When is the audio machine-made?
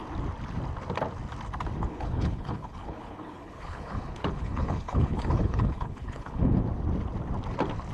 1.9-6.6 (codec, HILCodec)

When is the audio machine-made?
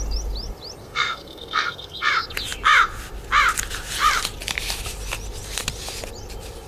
0.8-2.1 (codec, SNAC)